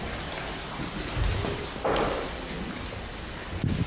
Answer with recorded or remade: recorded